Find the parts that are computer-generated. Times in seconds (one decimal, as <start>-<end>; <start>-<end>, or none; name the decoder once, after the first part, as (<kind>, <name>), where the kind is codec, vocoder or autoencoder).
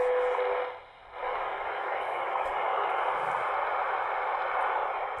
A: 1.2-3.0 (codec, DAC)